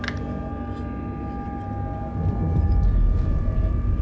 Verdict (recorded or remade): recorded